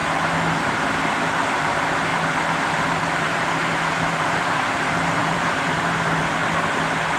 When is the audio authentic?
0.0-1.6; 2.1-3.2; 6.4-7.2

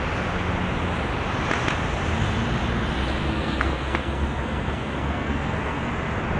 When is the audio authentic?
0.0-3.2; 5.9-6.4

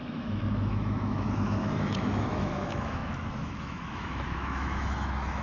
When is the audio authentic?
none

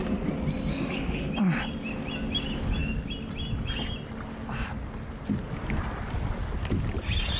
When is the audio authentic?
0.0-0.7; 1.3-7.4

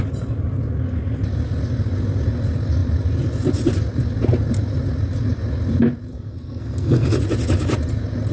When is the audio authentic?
0.0-6.1; 7.2-8.3

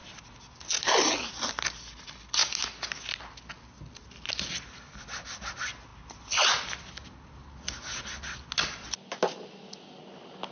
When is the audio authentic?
0.0-10.5

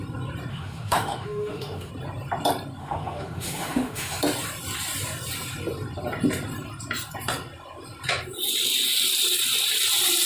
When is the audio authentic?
0.0-0.5; 1.9-2.8; 4.2-10.3

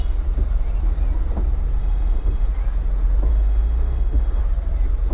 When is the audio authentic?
0.0-1.8; 2.5-3.3; 4.4-5.1